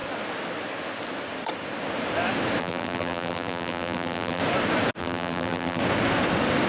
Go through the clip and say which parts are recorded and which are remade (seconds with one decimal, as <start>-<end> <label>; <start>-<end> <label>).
0.0-2.6 recorded; 2.6-4.4 remade; 4.4-5.0 recorded; 5.0-5.8 remade; 5.8-6.7 recorded